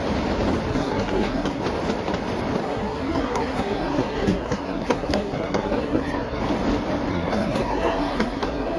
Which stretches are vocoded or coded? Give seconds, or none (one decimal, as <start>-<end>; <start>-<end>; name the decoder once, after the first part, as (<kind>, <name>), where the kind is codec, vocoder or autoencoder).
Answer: 0.7-1.6 (codec, SNAC); 2.6-6.4; 7.1-8.8